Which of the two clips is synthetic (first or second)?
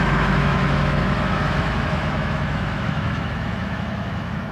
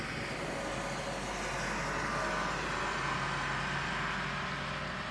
first